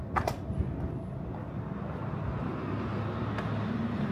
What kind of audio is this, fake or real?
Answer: real